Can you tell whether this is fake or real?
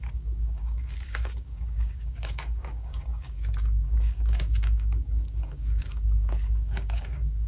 fake